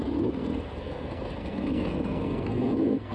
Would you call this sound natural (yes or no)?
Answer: no